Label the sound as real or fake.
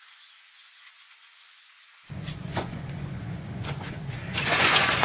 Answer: fake